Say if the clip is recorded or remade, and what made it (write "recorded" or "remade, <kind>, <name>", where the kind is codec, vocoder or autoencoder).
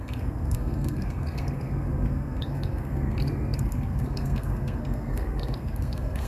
remade, codec, SNAC